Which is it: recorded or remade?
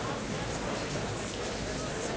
recorded